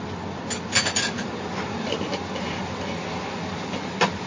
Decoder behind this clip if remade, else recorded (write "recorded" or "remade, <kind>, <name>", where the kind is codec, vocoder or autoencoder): recorded